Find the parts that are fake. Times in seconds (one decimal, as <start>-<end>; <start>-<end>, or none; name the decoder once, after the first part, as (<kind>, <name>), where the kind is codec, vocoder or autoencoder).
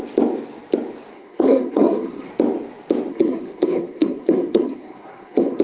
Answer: 1.1-2.3 (codec, SNAC); 3.1-5.6